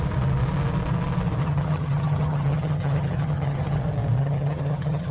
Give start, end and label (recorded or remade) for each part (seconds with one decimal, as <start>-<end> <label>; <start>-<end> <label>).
0.0-1.4 recorded; 1.4-3.8 remade; 3.8-4.2 recorded; 4.2-5.1 remade

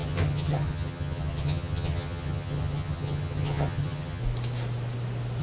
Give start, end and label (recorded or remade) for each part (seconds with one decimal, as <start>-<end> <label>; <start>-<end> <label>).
0.0-4.2 remade; 4.2-5.4 recorded

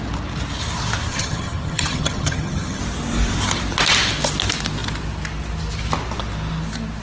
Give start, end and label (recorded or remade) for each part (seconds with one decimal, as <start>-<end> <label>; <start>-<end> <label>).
0.0-1.1 recorded; 1.1-2.8 remade; 2.8-7.0 recorded

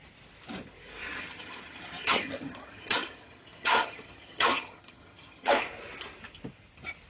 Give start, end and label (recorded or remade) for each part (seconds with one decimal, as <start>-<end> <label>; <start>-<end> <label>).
0.0-1.2 recorded; 1.2-5.5 remade; 5.5-7.1 recorded

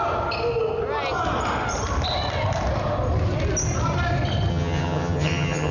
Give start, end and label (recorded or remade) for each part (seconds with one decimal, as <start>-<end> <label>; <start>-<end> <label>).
0.0-4.5 recorded; 4.5-5.7 remade